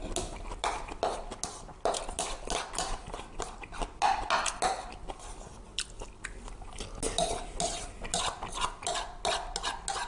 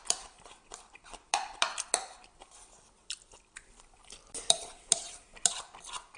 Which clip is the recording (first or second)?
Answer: first